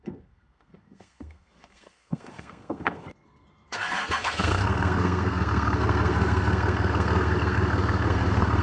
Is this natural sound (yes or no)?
no